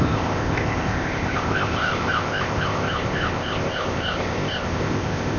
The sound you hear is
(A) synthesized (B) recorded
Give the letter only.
A